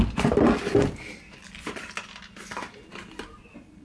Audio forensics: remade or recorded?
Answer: recorded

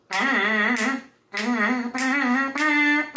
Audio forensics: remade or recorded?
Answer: recorded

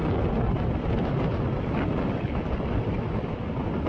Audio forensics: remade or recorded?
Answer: recorded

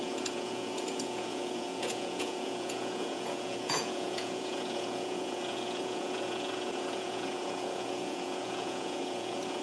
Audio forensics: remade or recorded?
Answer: remade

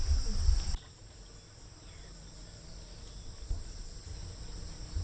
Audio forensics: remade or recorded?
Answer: recorded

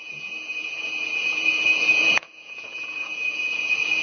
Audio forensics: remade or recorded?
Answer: remade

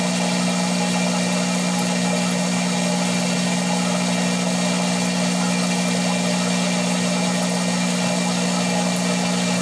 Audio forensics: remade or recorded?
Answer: recorded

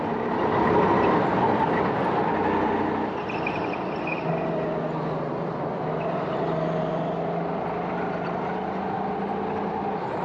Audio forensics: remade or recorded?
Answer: recorded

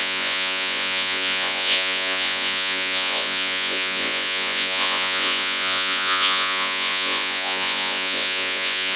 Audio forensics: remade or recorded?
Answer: remade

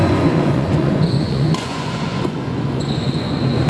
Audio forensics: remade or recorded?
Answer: remade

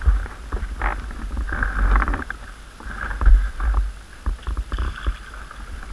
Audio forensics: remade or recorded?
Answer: recorded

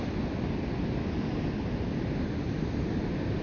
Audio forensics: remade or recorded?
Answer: recorded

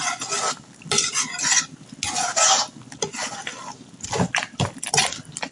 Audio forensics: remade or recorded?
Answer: recorded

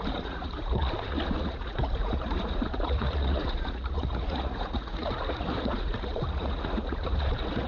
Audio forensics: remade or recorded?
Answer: remade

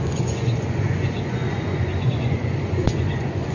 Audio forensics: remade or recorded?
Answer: remade